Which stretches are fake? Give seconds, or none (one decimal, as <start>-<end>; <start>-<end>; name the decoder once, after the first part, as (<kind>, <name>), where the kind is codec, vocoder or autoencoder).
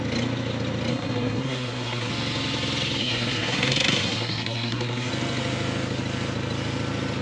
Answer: 0.9-2.1 (codec, SNAC); 3.0-5.1